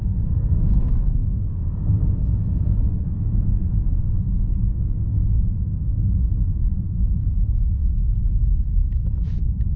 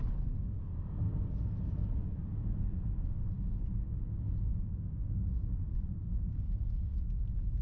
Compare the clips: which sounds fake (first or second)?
first